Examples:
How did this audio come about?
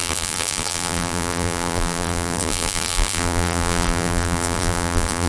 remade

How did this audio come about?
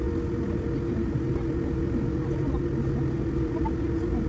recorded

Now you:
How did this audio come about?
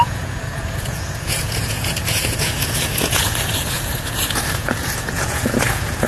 remade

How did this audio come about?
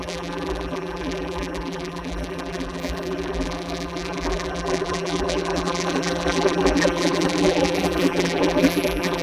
remade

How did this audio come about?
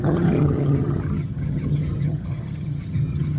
remade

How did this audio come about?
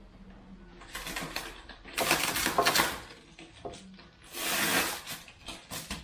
recorded